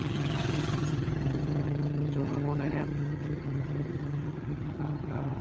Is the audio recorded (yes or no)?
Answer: no